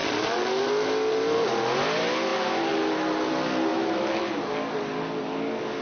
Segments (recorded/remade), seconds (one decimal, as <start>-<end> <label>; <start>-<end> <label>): 0.0-3.7 recorded; 3.7-4.3 remade; 4.3-5.8 recorded